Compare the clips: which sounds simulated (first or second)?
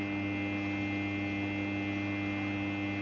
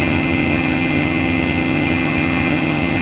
second